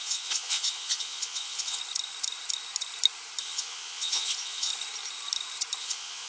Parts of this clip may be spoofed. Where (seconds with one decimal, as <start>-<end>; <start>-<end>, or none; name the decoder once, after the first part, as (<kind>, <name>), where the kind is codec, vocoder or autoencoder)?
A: 0.0-1.8 (vocoder, Vocos); 3.4-4.7; 5.8-6.3